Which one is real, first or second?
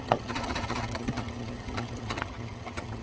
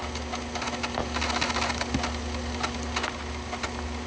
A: second